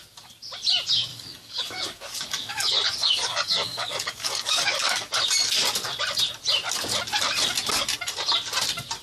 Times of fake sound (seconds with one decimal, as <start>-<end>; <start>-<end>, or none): 1.1-5.1